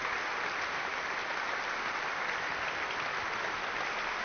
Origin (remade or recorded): recorded